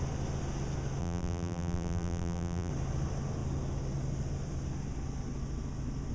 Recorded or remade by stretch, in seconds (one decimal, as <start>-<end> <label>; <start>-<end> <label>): 0.0-1.0 recorded; 1.0-2.7 remade; 2.7-6.1 recorded